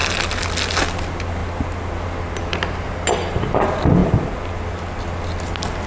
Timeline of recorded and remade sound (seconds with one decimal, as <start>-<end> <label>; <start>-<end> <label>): 0.0-5.9 recorded